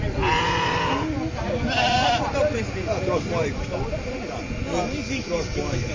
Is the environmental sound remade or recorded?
recorded